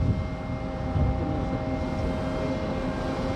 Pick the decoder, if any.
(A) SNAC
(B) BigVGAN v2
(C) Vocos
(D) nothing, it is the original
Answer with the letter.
D